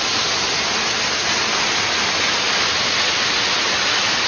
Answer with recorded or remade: recorded